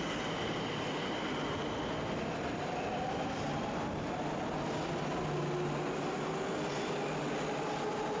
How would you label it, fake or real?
real